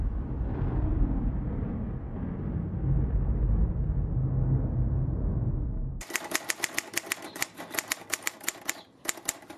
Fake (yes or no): no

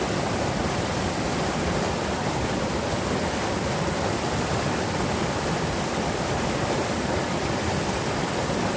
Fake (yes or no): no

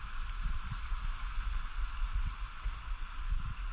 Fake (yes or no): no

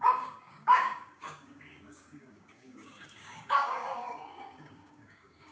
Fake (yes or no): yes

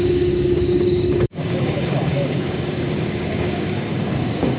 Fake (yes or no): yes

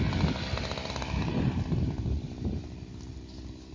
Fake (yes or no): no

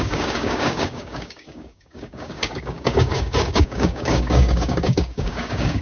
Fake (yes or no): yes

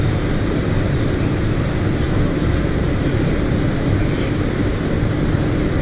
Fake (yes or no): no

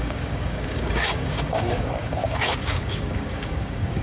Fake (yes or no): yes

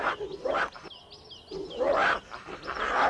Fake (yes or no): no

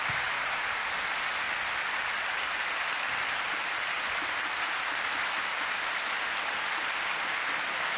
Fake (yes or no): no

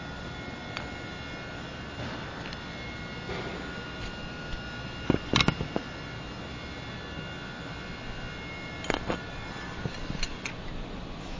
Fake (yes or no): no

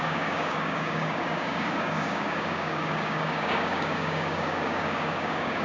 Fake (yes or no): yes